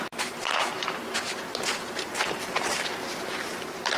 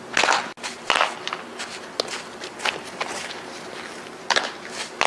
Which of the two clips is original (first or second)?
second